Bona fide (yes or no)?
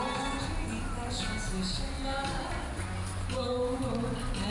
yes